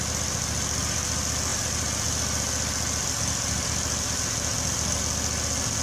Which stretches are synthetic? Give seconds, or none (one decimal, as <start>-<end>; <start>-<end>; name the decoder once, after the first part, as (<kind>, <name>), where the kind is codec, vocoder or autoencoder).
none